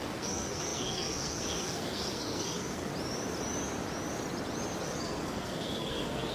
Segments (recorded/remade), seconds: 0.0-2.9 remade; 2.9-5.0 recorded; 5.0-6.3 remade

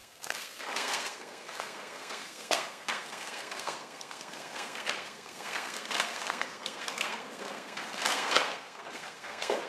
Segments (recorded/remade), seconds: 0.0-9.7 remade

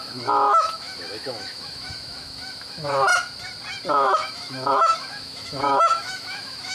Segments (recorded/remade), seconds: 0.0-3.1 remade; 3.1-3.9 recorded; 3.9-6.7 remade

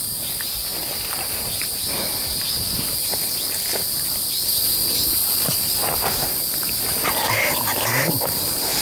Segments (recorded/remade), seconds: 0.0-8.8 recorded

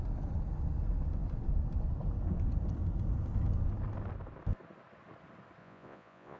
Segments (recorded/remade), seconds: 0.0-5.6 recorded; 5.6-6.4 remade

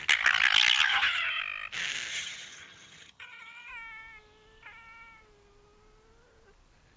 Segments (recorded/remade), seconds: 0.0-0.9 recorded; 0.9-1.4 remade; 1.4-2.1 recorded; 2.1-3.7 remade; 3.7-7.0 recorded